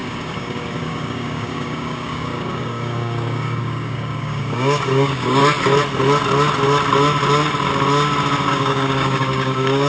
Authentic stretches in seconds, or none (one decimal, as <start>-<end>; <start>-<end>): 5.4-8.5